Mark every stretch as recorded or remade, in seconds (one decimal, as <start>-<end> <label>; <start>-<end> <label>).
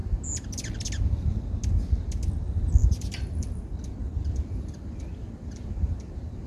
0.0-2.8 recorded; 2.8-3.6 remade; 3.6-4.0 recorded; 4.0-5.9 remade; 5.9-6.5 recorded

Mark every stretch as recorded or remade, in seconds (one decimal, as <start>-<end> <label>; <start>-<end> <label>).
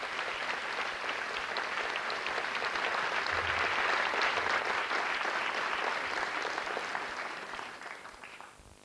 0.0-8.8 recorded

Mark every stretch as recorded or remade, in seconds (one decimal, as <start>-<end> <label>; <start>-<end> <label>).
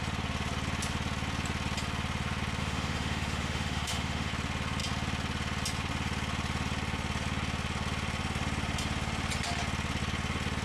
0.0-2.6 recorded; 2.6-4.3 remade; 4.3-10.6 recorded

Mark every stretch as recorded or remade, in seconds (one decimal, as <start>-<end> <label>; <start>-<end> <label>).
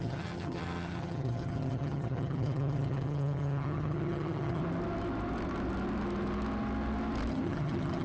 0.0-4.6 remade; 4.6-7.3 recorded; 7.3-8.0 remade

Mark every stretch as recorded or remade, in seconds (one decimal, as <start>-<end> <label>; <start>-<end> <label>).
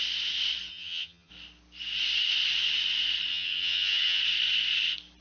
0.0-0.7 recorded; 0.7-1.3 remade; 1.3-3.3 recorded; 3.3-4.2 remade; 4.2-5.2 recorded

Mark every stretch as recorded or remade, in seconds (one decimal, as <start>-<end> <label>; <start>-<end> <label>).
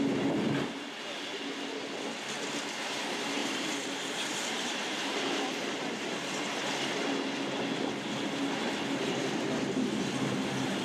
0.0-3.4 recorded; 3.4-6.7 remade; 6.7-10.8 recorded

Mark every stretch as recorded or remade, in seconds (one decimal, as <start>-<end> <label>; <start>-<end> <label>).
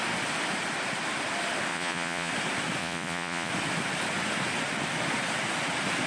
0.0-1.7 recorded; 1.7-2.3 remade; 2.3-2.8 recorded; 2.8-3.5 remade; 3.5-6.1 recorded